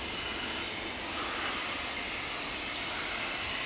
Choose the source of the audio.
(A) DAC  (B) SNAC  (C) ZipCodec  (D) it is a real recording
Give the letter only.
D